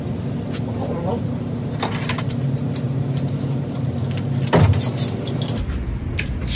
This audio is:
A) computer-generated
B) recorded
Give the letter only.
B